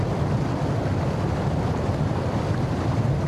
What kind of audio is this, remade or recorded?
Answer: recorded